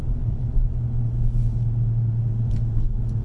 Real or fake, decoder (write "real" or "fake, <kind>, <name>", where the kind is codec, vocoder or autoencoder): real